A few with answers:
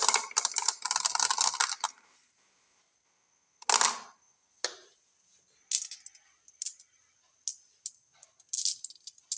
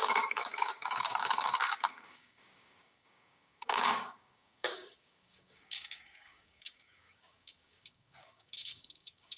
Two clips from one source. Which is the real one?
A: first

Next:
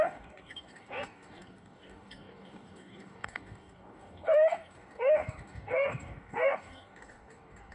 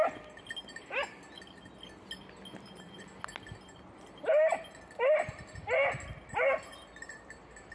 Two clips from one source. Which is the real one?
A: second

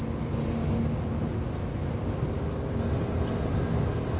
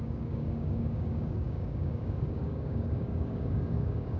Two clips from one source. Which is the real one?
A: first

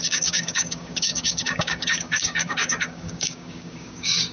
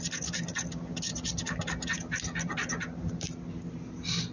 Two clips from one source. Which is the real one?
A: second